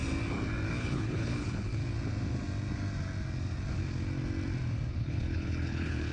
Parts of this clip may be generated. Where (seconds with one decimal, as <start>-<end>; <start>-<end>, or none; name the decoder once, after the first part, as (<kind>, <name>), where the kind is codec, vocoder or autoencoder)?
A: 0.8-1.8 (codec, HILCodec); 4.9-6.1